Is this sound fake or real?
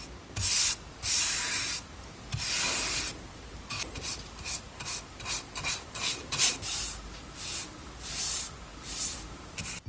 real